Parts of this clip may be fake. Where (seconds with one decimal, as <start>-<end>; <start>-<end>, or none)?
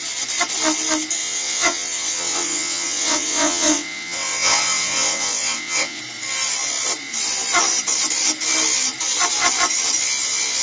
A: 1.2-6.0